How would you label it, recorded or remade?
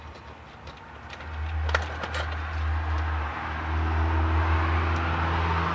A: recorded